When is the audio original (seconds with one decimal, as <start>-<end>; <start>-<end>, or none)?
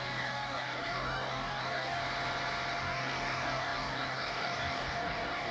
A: 2.0-2.8